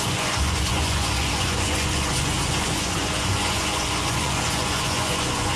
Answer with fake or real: fake